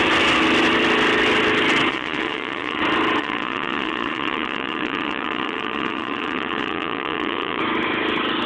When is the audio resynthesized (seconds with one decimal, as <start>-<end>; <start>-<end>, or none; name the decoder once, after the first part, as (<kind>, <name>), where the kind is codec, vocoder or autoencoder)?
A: 1.9-2.8 (vocoder, Vocos); 3.2-7.6